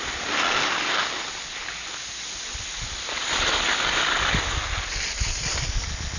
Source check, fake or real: real